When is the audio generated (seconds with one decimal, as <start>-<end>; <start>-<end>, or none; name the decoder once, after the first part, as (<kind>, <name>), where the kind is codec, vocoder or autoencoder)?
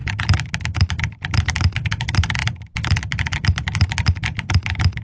none